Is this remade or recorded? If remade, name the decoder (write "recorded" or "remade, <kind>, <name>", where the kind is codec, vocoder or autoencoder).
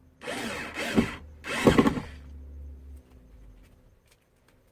recorded